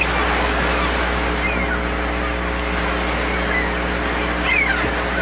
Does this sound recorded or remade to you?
recorded